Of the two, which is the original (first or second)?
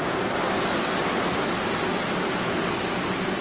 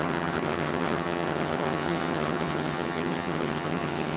first